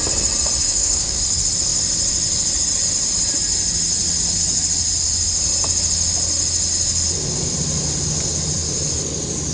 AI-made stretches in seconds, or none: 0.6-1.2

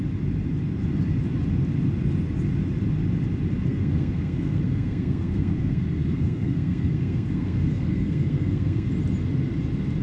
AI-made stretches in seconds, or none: 3.7-8.9